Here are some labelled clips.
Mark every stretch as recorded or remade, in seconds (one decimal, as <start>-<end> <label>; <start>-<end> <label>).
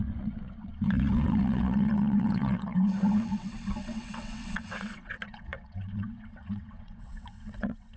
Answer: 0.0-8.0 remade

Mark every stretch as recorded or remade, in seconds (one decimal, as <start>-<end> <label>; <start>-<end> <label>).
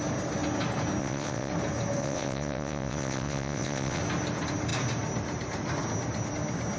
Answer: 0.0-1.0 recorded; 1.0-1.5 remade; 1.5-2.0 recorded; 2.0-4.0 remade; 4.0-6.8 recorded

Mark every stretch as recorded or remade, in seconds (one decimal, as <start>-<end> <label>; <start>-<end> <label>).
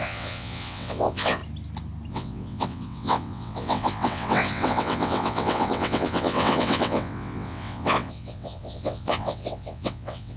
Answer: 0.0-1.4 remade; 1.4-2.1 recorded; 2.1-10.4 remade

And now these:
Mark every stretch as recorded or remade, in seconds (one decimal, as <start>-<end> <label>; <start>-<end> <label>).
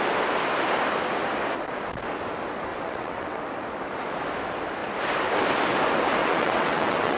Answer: 0.0-2.7 recorded; 2.7-3.4 remade; 3.4-6.2 recorded; 6.2-7.2 remade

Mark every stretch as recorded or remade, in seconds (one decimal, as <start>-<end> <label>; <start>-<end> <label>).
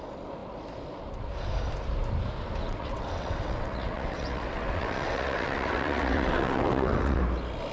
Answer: 0.0-2.6 recorded; 2.6-7.2 remade; 7.2-7.7 recorded